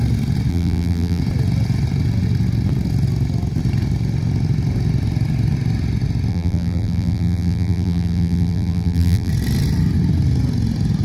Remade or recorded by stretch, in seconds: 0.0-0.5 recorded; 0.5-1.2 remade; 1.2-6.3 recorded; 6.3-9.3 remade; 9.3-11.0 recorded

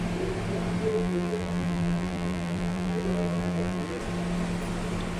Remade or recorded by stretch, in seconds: 0.0-0.9 recorded; 0.9-4.0 remade; 4.0-5.2 recorded